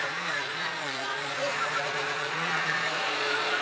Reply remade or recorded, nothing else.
remade